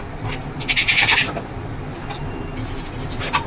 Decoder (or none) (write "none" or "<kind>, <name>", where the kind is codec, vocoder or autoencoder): none